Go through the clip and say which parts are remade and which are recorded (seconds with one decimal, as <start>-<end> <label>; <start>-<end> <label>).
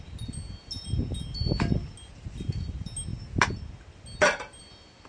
0.0-5.1 recorded